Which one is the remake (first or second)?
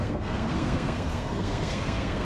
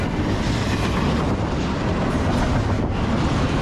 first